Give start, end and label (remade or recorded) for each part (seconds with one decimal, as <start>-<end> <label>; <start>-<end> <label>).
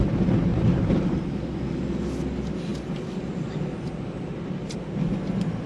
0.0-0.5 recorded; 0.5-1.3 remade; 1.3-5.7 recorded